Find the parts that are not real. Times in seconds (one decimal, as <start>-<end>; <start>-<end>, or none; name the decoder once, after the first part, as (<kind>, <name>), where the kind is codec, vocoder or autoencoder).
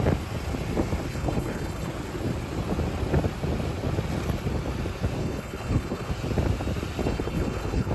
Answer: 1.1-1.9 (codec, HILCodec); 5.2-6.1; 7.0-7.9